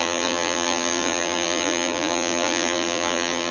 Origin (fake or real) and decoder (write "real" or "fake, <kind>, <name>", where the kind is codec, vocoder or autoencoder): fake, vocoder, BigVGAN v2